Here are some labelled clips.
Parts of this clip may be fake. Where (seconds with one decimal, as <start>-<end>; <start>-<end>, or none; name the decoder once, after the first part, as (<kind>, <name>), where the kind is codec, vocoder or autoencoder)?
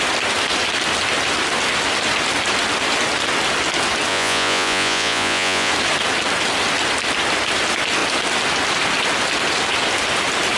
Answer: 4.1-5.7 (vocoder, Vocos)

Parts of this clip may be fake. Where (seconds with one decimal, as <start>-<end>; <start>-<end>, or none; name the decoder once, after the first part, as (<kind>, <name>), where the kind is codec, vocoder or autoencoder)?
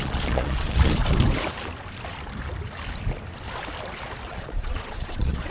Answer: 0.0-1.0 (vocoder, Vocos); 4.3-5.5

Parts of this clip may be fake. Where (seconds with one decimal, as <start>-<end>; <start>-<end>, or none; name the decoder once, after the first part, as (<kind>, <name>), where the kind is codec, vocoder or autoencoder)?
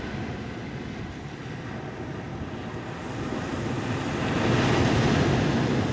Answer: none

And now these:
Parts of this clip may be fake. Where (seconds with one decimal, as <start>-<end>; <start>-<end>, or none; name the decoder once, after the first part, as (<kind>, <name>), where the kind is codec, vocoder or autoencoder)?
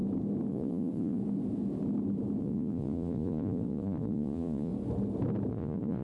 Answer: 0.5-1.2 (vocoder, Vocos); 2.4-4.7; 5.5-6.0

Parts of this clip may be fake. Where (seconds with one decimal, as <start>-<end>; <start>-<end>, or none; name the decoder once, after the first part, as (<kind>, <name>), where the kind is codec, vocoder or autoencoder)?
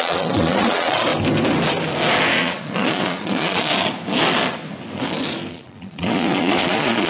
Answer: 0.0-1.1 (vocoder, Vocos); 2.4-3.7; 5.5-7.1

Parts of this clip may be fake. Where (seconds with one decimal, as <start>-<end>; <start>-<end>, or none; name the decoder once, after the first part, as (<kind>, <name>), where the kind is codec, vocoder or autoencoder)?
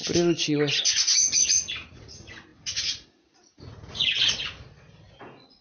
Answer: 0.8-5.6 (vocoder, Vocos)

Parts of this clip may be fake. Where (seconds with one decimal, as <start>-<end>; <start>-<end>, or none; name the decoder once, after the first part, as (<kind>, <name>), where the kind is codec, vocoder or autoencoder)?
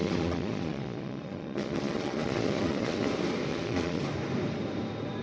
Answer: 0.0-3.1 (vocoder, Vocos); 3.5-4.0